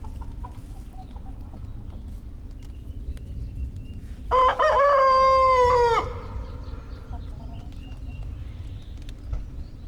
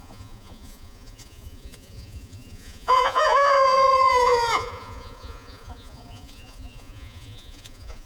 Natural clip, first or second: first